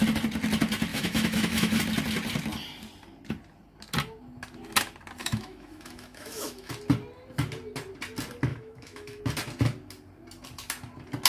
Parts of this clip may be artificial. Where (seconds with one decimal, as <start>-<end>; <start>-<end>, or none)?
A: 0.9-1.8; 5.2-6.7; 8.5-9.2